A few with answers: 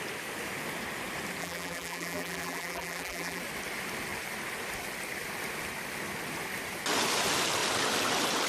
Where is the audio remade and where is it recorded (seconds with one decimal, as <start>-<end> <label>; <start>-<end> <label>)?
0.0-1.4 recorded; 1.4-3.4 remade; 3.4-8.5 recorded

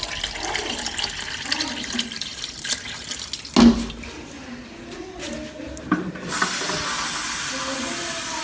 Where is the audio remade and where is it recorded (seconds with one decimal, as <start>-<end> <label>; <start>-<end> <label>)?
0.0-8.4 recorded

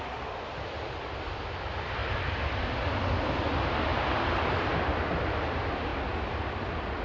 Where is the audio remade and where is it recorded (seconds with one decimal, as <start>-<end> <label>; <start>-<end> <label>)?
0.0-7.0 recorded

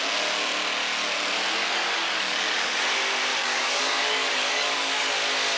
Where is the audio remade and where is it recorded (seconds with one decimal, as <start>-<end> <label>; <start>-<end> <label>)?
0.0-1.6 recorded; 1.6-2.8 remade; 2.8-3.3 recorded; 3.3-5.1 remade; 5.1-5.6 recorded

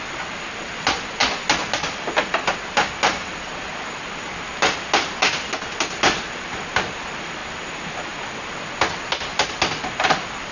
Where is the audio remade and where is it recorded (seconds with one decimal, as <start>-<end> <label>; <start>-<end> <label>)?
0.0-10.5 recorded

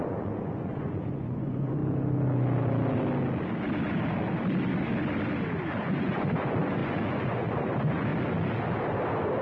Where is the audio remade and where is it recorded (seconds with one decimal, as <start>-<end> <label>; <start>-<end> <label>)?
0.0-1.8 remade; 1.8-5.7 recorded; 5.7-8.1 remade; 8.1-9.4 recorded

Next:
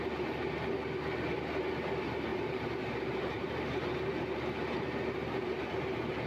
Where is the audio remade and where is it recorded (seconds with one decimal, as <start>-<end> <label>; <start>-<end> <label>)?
0.0-2.3 recorded; 2.3-3.8 remade; 3.8-6.3 recorded

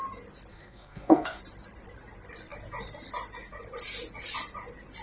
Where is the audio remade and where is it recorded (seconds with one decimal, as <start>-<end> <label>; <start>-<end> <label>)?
0.0-0.5 recorded; 0.5-1.4 remade; 1.4-5.0 recorded